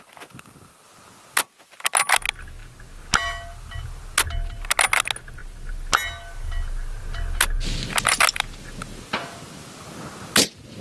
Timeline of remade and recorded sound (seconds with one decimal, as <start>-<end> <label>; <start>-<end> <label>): 0.0-10.8 recorded